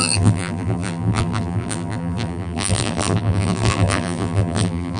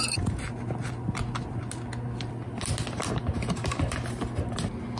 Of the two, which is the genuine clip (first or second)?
second